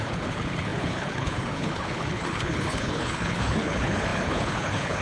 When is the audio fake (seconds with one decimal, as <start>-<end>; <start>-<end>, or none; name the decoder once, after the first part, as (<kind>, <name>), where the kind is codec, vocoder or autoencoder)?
0.0-5.0 (codec, HILCodec)